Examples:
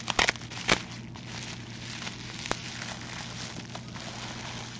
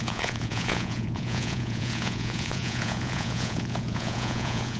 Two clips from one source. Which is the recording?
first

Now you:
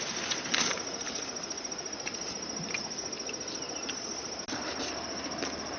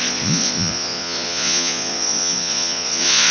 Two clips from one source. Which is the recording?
first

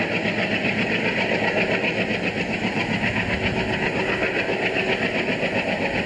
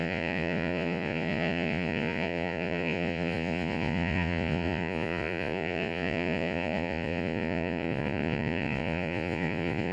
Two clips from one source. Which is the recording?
first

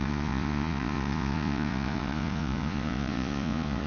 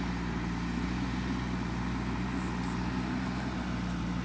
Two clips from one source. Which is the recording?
second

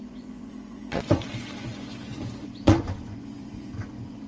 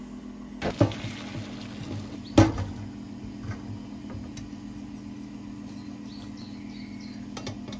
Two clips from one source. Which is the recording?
second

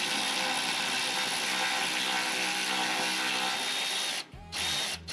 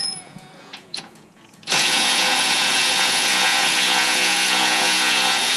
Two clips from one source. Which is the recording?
first